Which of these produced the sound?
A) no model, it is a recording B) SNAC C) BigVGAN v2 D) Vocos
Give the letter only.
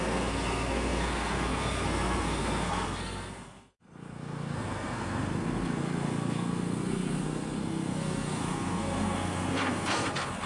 B